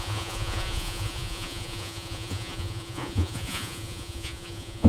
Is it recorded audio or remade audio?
remade